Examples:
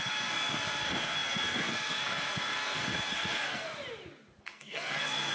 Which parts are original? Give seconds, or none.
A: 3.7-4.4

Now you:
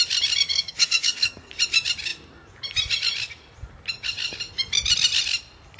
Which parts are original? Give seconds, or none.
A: 0.0-0.5; 1.5-5.8

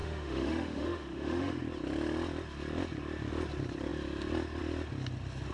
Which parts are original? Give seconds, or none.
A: 1.6-5.5

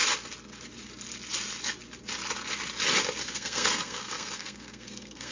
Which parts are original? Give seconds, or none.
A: 0.0-3.2

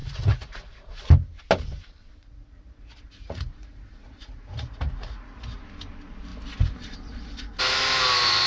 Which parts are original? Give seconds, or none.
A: 1.0-2.2; 5.6-8.5

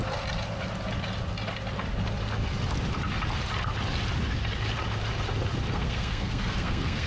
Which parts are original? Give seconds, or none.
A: 0.0-5.7

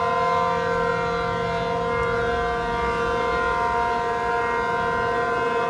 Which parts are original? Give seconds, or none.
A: 0.0-5.7